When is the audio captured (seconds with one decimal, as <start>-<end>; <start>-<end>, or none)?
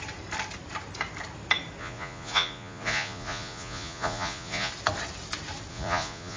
0.0-1.8; 4.7-5.7